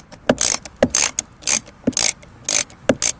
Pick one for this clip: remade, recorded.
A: recorded